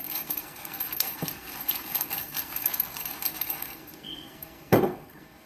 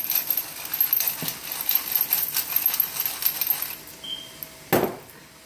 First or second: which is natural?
second